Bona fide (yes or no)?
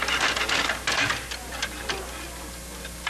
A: yes